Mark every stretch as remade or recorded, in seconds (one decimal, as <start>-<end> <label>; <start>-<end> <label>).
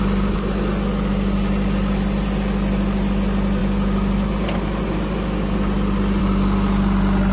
0.0-7.3 recorded